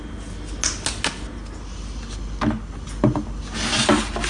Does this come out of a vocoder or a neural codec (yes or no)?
no